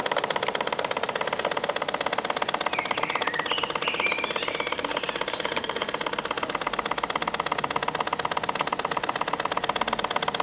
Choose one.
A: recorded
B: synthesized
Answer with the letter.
A